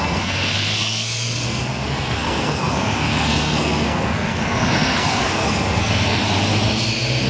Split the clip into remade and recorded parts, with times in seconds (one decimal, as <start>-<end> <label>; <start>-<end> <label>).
0.0-6.2 remade; 6.2-7.3 recorded